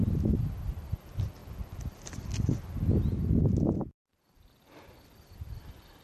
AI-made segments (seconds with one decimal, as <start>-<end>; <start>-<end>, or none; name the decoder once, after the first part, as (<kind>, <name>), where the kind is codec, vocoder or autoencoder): none